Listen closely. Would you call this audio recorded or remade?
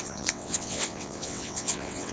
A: remade